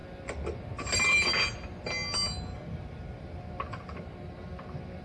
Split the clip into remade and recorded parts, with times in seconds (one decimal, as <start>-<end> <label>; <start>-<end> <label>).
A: 0.0-5.0 recorded